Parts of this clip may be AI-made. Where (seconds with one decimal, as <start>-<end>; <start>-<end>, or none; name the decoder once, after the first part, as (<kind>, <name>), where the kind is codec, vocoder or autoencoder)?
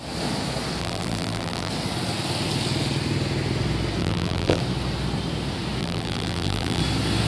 0.8-1.7 (vocoder, BigVGAN v2); 4.0-4.6; 5.8-6.8